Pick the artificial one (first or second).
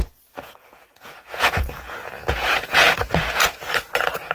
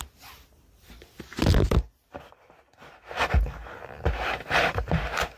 first